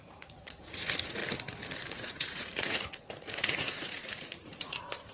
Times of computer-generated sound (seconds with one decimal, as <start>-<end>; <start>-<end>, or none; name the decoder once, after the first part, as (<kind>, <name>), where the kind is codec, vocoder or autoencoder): 0.0-1.2 (vocoder, Vocos); 1.9-5.1